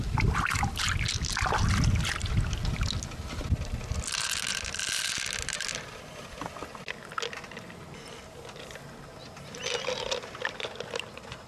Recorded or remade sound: recorded